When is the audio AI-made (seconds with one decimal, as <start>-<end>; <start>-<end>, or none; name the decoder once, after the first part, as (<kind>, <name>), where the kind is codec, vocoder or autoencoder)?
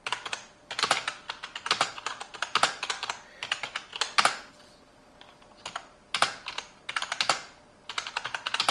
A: none